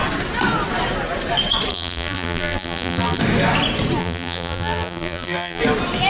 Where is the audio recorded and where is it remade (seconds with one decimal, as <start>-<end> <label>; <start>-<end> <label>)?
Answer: 0.0-1.7 recorded; 1.7-3.2 remade; 3.2-4.0 recorded; 4.0-5.6 remade; 5.6-6.1 recorded